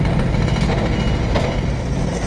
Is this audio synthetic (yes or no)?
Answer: no